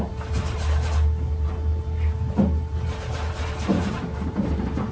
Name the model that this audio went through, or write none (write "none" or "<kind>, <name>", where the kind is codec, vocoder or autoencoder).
none